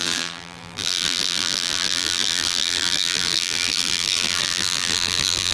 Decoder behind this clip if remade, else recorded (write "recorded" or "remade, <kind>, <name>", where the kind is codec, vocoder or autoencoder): remade, vocoder, BigVGAN v2